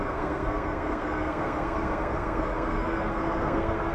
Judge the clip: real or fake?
fake